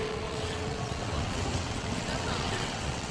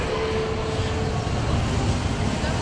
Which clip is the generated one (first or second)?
first